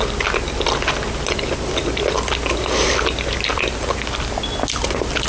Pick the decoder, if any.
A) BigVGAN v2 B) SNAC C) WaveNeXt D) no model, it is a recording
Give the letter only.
D